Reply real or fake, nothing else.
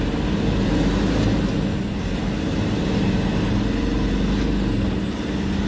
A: real